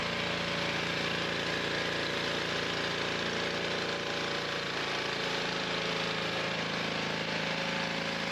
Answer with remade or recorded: recorded